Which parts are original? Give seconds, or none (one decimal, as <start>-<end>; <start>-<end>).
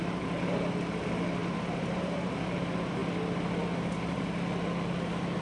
0.0-1.4; 2.5-5.4